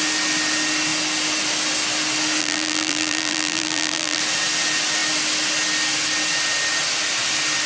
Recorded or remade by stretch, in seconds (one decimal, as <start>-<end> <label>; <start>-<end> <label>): 0.0-2.4 recorded; 2.4-4.2 remade; 4.2-7.7 recorded